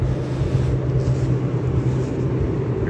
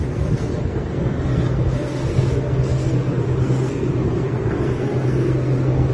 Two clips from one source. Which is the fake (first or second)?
second